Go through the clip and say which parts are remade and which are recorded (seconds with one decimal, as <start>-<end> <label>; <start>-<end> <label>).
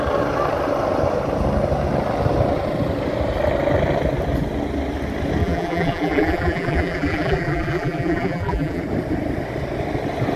0.0-5.4 recorded; 5.4-8.8 remade; 8.8-10.4 recorded